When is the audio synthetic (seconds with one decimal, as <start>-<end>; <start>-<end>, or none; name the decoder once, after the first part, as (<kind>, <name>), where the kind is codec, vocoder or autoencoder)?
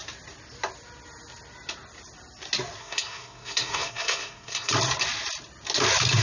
2.8-4.7 (codec, SNAC)